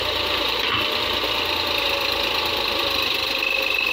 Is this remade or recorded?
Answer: recorded